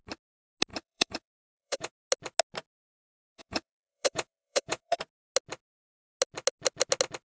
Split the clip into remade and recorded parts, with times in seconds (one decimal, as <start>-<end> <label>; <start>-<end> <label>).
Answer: 0.0-0.7 recorded; 0.7-1.9 remade; 1.9-3.0 recorded; 3.0-5.0 remade; 5.0-7.2 recorded